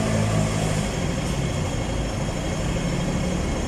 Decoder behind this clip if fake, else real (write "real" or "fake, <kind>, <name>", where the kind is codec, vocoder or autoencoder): real